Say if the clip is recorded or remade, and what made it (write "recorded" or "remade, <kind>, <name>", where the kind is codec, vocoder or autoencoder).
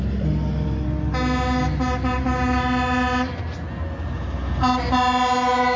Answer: recorded